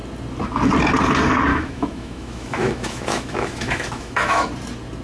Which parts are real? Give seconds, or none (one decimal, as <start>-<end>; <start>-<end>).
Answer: 0.0-1.5; 4.5-5.0